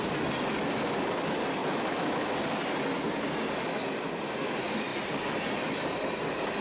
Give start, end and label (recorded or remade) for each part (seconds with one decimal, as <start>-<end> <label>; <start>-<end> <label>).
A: 0.0-1.6 recorded; 1.6-2.3 remade; 2.3-6.6 recorded